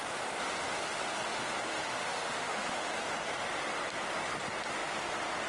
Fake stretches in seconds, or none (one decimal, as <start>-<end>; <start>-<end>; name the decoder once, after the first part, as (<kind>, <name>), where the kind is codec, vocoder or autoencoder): 1.7-2.9 (autoencoder, DAC-VAE)